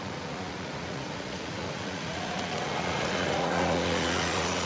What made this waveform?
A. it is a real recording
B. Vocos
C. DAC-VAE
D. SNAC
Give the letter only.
B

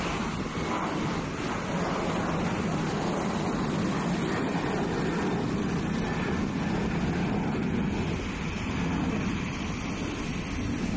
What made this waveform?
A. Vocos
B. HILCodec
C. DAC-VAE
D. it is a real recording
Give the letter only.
D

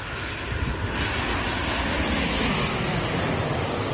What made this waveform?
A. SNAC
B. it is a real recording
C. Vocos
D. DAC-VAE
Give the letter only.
B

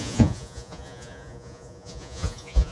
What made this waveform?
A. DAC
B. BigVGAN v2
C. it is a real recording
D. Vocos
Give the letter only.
D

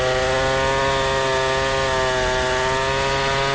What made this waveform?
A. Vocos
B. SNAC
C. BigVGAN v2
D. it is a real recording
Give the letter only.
D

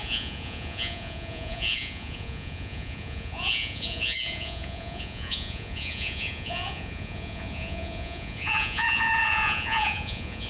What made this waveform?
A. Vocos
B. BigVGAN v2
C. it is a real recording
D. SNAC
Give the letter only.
A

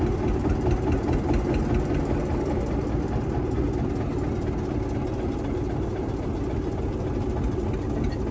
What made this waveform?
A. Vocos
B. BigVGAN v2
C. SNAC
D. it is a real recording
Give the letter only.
D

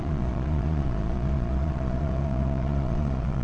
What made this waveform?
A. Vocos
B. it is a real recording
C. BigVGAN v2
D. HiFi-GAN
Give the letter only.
A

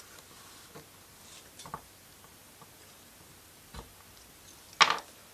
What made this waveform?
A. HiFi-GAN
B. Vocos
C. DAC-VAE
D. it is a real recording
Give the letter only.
D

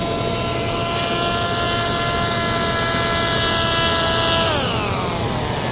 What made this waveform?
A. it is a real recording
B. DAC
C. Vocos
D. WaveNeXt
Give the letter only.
A